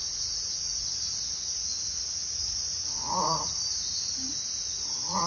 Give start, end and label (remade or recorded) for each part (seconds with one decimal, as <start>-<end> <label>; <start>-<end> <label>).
0.0-1.2 remade; 1.2-1.7 recorded; 1.7-5.3 remade